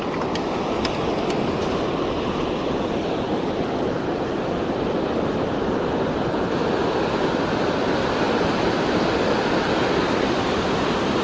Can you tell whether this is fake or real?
real